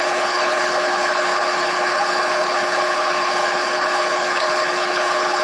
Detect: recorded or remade remade